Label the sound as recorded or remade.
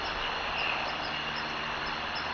recorded